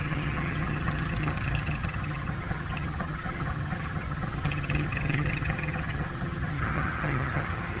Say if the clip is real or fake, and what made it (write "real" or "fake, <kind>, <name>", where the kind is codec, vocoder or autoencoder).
fake, vocoder, HiFi-GAN